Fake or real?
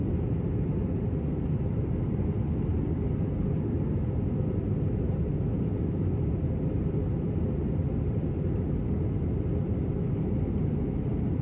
real